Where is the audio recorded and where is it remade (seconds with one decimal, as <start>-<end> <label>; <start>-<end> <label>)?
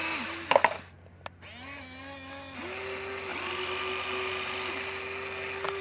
0.0-5.8 recorded